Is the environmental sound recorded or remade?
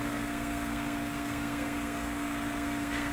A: remade